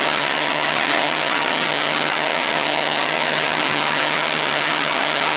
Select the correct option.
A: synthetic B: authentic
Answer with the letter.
A